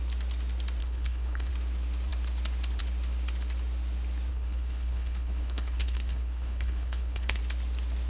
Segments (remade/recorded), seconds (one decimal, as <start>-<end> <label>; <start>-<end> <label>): 0.0-0.8 recorded; 0.8-1.5 remade; 1.5-4.3 recorded; 4.3-7.4 remade; 7.4-8.1 recorded